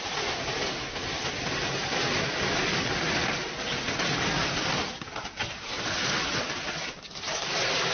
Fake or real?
real